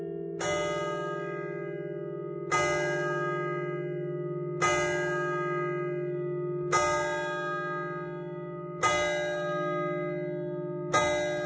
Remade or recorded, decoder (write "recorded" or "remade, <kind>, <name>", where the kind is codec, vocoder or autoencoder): recorded